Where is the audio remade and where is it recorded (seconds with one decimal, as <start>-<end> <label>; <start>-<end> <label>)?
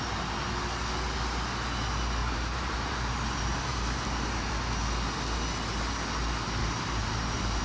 0.0-2.2 recorded; 2.2-4.5 remade; 4.5-6.6 recorded; 6.6-7.6 remade